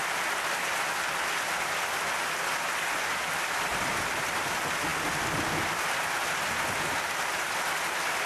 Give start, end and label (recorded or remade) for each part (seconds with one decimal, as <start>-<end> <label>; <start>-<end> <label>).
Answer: 0.0-8.3 recorded